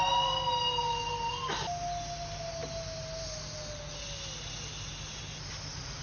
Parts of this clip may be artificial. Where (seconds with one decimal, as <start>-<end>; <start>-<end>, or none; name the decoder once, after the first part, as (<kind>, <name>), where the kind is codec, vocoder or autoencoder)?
none